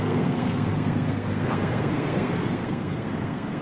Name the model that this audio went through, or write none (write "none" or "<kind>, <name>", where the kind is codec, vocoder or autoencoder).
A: codec, SNAC